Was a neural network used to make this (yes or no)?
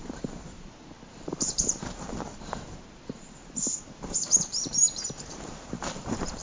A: yes